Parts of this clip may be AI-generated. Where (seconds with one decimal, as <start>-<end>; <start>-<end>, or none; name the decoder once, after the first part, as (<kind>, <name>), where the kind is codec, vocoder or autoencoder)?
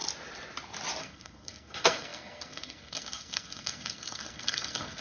1.0-5.0 (codec, SNAC)